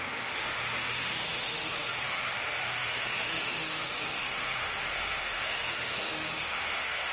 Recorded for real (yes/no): no